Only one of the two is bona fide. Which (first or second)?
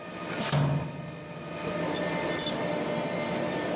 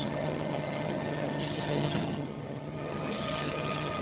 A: first